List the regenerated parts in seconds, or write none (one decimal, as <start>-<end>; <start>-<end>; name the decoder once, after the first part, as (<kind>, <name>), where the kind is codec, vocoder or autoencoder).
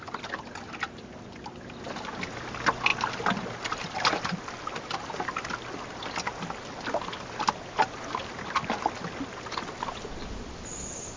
none